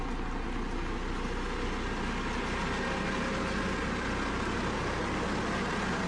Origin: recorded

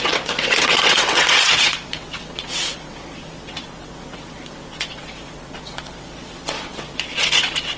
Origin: remade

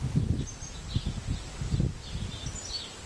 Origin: recorded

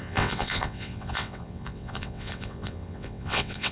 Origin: remade